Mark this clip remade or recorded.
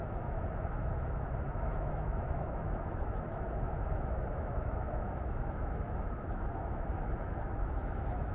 remade